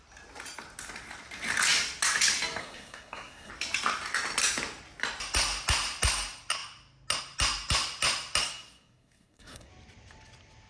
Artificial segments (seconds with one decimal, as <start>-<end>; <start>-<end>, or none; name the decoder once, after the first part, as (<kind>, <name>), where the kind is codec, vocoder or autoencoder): 2.6-3.5 (codec, SNAC); 8.4-9.7